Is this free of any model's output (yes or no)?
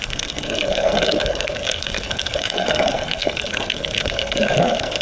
no